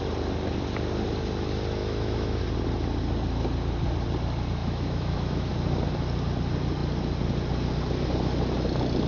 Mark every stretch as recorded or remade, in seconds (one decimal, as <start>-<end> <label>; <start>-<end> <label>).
0.0-1.8 recorded; 1.8-2.4 remade; 2.4-4.6 recorded; 4.6-5.5 remade; 5.5-9.1 recorded